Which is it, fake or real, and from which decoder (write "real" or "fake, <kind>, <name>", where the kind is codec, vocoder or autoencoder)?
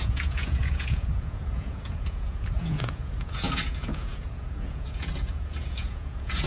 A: fake, vocoder, Vocos